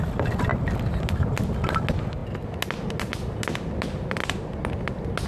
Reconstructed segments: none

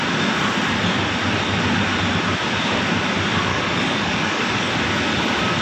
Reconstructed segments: 3.5-4.7 (codec, DAC)